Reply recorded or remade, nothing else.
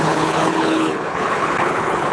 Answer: remade